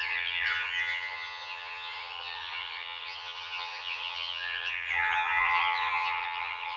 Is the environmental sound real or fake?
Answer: fake